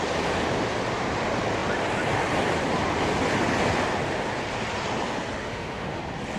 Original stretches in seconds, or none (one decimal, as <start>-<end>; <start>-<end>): 0.0-5.4; 6.0-6.4